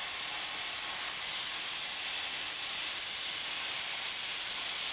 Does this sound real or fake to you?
real